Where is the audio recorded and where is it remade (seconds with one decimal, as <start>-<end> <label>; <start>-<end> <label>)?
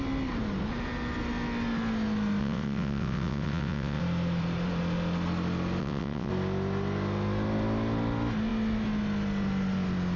0.0-2.4 recorded; 2.4-4.0 remade; 4.0-5.8 recorded; 5.8-6.3 remade; 6.3-10.2 recorded